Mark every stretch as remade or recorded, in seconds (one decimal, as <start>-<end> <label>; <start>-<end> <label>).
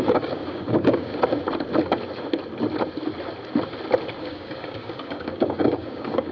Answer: 0.0-1.1 remade; 1.1-4.2 recorded; 4.2-6.3 remade